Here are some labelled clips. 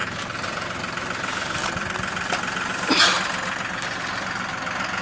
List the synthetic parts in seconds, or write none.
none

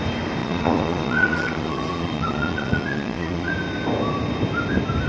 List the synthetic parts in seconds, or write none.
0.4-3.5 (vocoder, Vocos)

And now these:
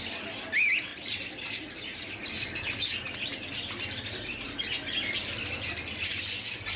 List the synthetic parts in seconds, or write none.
0.9-2.3 (vocoder, BigVGAN v2)

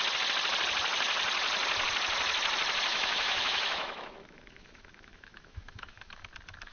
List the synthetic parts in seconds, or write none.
2.9-6.3 (autoencoder, DAC-VAE)